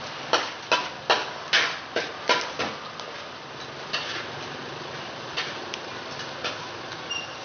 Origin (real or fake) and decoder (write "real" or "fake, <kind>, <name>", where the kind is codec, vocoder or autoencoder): real